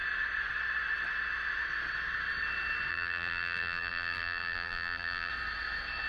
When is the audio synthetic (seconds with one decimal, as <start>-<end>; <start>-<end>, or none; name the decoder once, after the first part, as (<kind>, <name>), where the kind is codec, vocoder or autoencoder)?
2.9-5.3 (vocoder, BigVGAN v2)